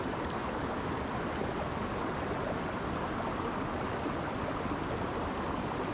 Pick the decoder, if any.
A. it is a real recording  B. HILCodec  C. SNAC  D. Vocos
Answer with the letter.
A